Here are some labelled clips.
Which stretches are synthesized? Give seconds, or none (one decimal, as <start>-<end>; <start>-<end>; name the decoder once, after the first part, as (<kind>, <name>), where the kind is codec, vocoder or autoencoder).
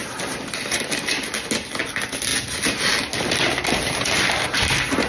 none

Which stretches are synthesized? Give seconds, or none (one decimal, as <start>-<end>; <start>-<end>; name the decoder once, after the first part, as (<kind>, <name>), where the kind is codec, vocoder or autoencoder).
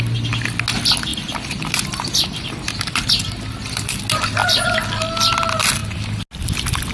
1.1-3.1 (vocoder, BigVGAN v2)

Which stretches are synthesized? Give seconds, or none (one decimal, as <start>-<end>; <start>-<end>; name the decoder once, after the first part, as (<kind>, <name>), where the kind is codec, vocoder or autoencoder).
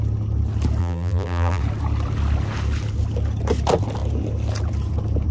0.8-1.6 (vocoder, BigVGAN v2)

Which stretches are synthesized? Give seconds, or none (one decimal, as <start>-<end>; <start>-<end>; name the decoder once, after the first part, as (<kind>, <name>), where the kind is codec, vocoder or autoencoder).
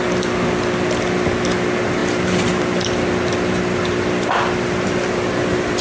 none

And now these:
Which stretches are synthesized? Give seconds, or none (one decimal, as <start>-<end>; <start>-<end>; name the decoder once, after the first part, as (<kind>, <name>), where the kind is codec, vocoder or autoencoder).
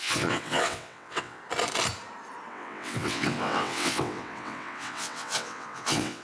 0.0-1.4 (vocoder, WaveNeXt); 2.5-6.2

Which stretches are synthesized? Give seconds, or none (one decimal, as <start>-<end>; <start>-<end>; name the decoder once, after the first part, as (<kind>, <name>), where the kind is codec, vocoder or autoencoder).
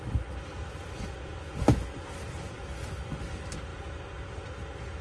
none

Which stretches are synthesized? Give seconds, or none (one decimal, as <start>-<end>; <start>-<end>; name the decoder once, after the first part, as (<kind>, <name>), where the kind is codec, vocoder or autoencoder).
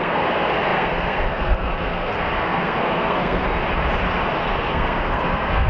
0.0-3.4 (codec, SNAC); 4.4-5.7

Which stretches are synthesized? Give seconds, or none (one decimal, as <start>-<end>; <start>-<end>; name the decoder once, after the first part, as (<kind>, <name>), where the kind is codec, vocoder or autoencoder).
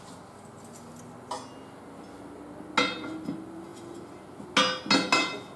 none